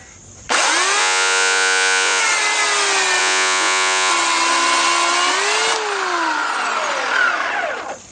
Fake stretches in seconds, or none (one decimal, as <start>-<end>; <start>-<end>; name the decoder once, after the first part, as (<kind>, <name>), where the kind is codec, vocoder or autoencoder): 1.0-2.2 (vocoder, Vocos); 3.2-4.1